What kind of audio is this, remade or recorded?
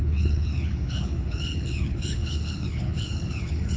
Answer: remade